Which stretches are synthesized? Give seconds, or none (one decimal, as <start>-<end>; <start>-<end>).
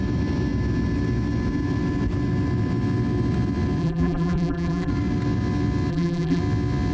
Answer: 3.8-4.9; 5.9-6.4